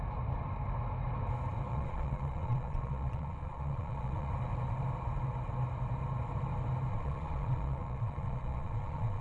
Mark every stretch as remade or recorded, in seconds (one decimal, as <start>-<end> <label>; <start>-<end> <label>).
0.0-1.7 recorded; 1.7-4.3 remade; 4.3-6.9 recorded; 6.9-9.2 remade